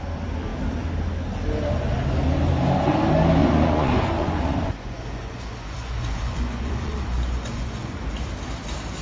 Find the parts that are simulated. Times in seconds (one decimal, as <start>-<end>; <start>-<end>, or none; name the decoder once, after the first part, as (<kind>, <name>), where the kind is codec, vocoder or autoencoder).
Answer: 3.4-8.0 (vocoder, Vocos)

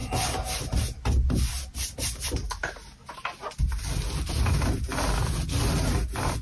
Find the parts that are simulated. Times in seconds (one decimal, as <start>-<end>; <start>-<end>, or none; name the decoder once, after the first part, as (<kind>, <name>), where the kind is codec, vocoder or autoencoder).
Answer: none

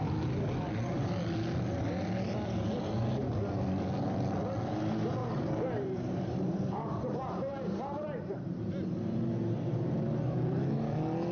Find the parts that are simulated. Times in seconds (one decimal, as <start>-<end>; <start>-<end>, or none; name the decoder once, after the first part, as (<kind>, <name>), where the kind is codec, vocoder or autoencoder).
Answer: 5.2-8.7 (vocoder, BigVGAN v2)

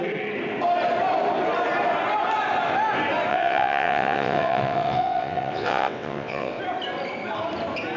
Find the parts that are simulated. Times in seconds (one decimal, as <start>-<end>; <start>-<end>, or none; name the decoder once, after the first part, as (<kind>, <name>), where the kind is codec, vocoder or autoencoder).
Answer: 3.3-6.6 (vocoder, WaveNeXt)

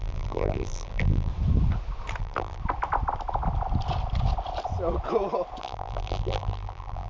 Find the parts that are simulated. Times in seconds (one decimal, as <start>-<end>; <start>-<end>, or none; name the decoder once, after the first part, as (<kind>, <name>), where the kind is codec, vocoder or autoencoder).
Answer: 0.0-1.3 (vocoder, BigVGAN v2); 2.2-2.6; 5.6-7.1

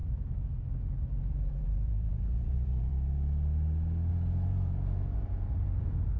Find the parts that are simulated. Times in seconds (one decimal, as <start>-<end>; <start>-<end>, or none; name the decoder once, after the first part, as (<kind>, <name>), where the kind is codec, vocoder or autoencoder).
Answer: 0.0-2.9 (vocoder, Vocos); 4.1-6.2

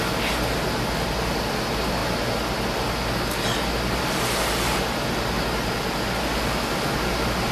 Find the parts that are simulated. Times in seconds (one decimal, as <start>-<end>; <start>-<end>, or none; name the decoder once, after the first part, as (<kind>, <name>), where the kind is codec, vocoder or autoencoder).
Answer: none